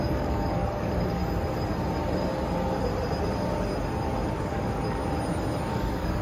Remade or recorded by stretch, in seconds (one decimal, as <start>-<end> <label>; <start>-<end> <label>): 0.0-1.2 remade; 1.2-4.3 recorded; 4.3-5.0 remade; 5.0-5.7 recorded; 5.7-6.2 remade